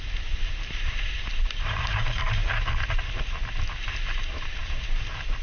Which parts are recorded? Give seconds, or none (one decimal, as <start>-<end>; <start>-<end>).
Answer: 2.4-3.7